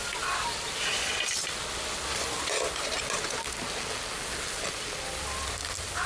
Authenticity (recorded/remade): recorded